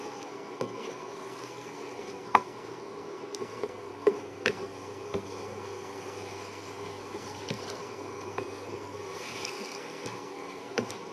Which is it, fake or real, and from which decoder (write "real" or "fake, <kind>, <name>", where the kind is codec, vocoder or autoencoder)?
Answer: fake, codec, SNAC